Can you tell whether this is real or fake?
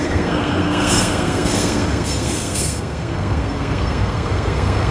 fake